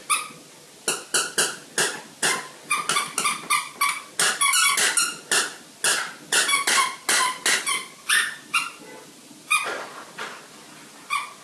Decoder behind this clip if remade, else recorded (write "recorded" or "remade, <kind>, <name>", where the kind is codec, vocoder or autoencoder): recorded